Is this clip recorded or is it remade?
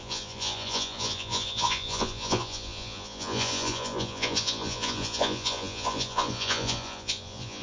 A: remade